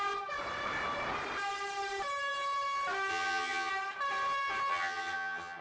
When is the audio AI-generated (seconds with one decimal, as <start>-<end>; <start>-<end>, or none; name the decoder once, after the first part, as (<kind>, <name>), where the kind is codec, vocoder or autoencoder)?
3.1-3.7 (vocoder, HiFi-GAN); 4.7-5.6

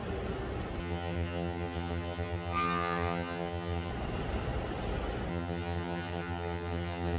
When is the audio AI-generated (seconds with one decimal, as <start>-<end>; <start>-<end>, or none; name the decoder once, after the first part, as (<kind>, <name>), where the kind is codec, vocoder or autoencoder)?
0.8-3.9 (vocoder, HiFi-GAN); 5.3-7.2

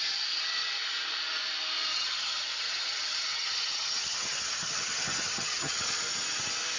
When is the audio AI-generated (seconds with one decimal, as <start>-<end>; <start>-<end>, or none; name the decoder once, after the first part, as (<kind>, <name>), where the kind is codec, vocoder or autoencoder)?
1.9-6.0 (vocoder, HiFi-GAN)

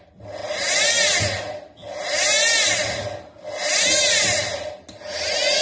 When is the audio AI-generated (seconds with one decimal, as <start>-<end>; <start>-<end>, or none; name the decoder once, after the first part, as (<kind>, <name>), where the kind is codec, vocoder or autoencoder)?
none